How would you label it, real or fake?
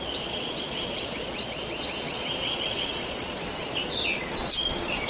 fake